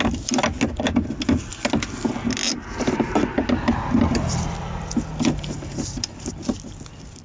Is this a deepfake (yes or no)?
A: no